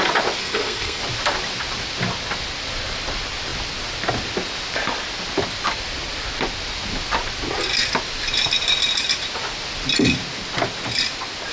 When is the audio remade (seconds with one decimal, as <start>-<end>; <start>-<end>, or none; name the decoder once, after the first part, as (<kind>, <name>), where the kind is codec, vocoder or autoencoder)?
0.4-1.0 (codec, SNAC)